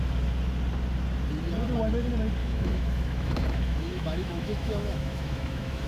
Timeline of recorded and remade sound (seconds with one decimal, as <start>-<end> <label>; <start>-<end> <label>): 0.0-2.4 recorded; 2.4-5.9 remade